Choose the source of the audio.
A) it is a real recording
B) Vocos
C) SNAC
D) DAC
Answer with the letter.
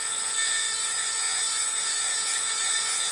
B